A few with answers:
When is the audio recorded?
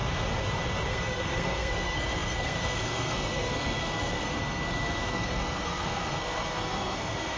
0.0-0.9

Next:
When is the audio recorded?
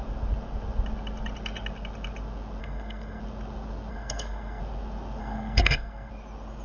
0.0-2.6; 3.2-3.9; 4.6-5.2; 6.1-6.6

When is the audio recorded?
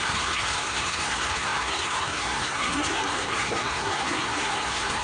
none